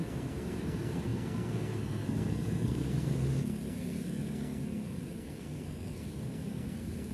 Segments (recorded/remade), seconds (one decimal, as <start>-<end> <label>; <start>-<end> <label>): 0.0-7.1 remade